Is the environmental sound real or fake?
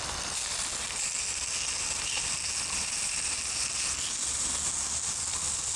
real